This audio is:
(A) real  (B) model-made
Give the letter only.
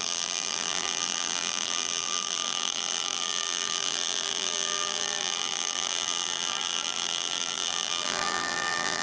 B